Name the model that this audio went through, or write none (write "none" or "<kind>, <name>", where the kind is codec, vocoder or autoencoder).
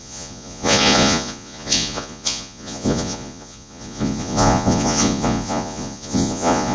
vocoder, Vocos